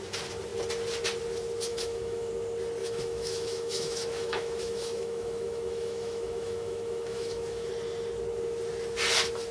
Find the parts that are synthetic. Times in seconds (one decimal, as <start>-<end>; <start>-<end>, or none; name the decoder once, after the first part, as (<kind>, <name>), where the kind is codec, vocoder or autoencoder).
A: 1.7-2.3 (autoencoder, DAC-VAE); 2.8-7.7